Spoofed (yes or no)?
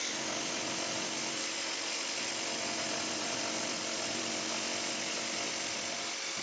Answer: yes